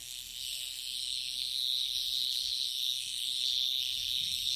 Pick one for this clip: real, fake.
fake